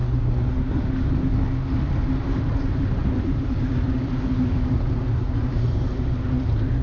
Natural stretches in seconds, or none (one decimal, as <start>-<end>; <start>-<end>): 0.0-2.0